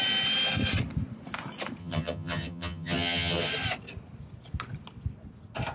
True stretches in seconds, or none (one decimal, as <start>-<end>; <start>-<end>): 0.0-1.8; 3.5-5.7

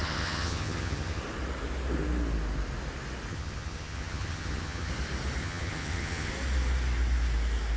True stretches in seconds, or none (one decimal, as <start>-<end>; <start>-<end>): 1.2-3.3; 4.9-5.4; 6.3-7.8

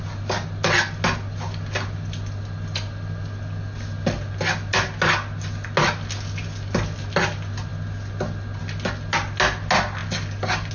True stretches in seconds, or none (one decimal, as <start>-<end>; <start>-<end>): 0.0-10.7

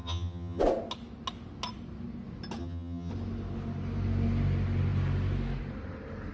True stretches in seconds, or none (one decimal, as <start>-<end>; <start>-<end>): 0.6-2.6; 3.1-6.3

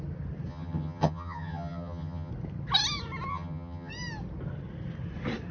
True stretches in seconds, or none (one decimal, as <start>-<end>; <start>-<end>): 0.0-0.5; 2.3-3.3; 3.9-5.5

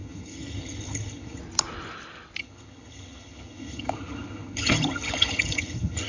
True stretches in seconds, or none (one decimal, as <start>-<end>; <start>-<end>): 1.4-2.4

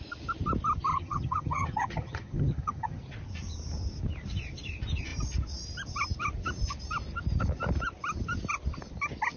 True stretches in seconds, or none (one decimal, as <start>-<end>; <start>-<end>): 0.0-0.9; 3.0-9.4